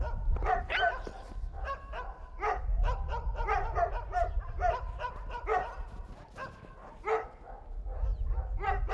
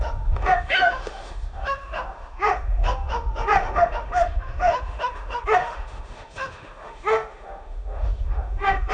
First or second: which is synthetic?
second